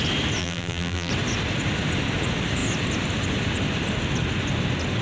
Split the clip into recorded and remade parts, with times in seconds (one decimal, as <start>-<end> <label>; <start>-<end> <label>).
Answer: 0.0-0.4 recorded; 0.4-1.1 remade; 1.1-5.0 recorded